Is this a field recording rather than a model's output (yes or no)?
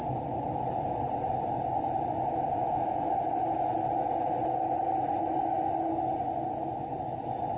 yes